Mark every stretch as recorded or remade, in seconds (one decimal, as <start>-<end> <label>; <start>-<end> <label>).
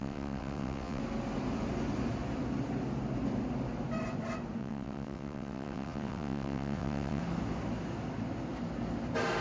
0.0-1.0 remade; 1.0-4.6 recorded; 4.6-7.2 remade; 7.2-9.4 recorded